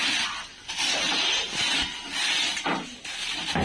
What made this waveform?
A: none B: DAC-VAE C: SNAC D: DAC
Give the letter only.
A